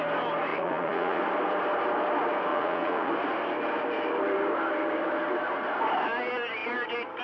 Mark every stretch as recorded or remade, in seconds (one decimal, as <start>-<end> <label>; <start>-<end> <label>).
0.0-0.5 recorded; 0.5-1.2 remade; 1.2-2.5 recorded; 2.5-3.1 remade; 3.1-7.2 recorded